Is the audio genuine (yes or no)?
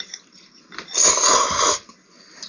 yes